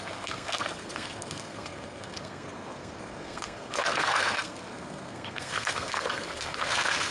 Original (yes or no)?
no